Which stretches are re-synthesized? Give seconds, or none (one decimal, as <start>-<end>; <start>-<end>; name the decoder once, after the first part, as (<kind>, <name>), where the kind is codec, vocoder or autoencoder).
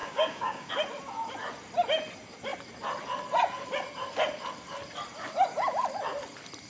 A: 0.0-0.7 (codec, DAC)